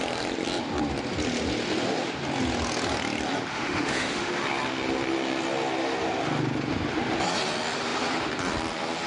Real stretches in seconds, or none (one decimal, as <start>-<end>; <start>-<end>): 0.0-3.5; 4.3-9.1